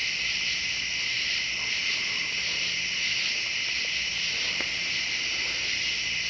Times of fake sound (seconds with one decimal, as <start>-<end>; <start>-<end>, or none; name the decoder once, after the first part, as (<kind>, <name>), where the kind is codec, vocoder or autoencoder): none

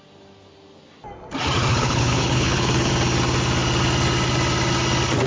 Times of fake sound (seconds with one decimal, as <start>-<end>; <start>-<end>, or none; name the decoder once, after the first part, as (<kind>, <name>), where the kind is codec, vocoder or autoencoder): 1.7-2.9 (codec, HILCodec)

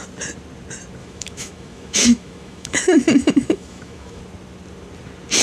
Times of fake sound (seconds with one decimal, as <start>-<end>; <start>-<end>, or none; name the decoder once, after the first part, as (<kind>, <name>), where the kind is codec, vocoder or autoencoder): 1.0-4.2 (autoencoder, DAC-VAE)